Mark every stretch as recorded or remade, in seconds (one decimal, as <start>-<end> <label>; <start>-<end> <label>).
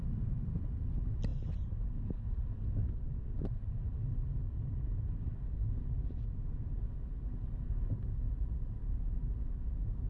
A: 0.0-10.1 recorded